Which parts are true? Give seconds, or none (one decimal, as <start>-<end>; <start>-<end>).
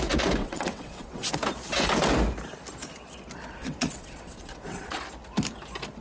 0.0-0.4; 1.3-3.6; 5.0-6.0